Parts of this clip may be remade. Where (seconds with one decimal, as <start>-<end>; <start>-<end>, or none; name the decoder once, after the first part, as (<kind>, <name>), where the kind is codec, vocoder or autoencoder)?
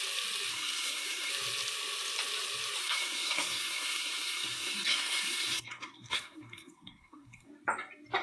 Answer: 0.5-1.3 (codec, SNAC); 2.8-7.5